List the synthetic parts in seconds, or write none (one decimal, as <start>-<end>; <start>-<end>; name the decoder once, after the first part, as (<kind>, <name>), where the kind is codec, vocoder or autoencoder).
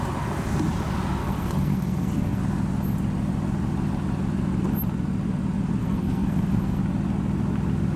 1.2-2.4 (codec, SNAC); 5.8-6.8